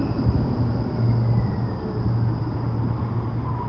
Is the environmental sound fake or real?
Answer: real